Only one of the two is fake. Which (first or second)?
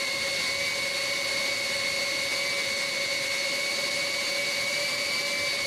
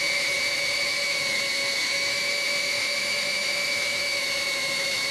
second